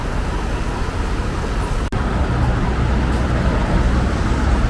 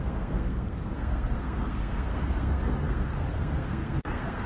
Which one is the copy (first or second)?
second